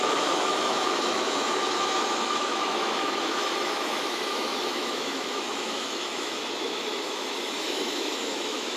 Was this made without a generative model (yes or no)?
no